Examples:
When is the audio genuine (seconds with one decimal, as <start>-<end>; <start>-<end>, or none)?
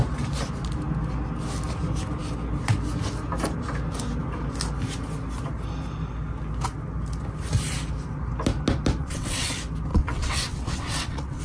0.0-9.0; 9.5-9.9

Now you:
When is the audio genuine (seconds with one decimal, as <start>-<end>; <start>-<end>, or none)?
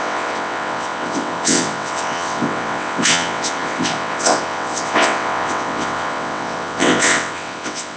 none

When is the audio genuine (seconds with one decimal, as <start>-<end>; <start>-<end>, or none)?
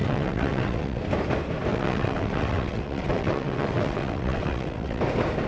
1.0-1.7; 5.0-5.5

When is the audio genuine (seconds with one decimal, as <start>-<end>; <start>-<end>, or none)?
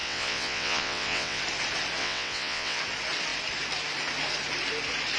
1.4-2.0; 2.8-5.2